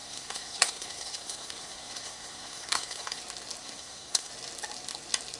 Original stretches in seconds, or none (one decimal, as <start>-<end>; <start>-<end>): 3.2-3.6; 4.3-5.4